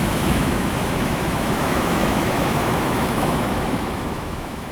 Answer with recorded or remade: remade